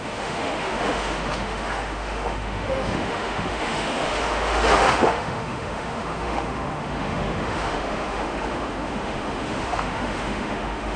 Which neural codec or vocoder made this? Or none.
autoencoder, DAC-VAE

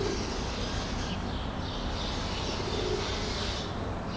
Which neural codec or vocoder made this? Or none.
none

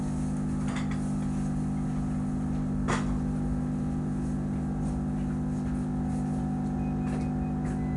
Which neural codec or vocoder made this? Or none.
none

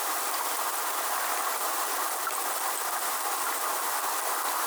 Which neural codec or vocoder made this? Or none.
none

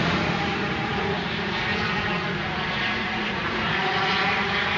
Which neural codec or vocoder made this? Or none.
vocoder, Vocos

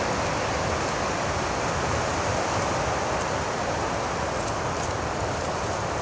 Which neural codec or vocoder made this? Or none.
none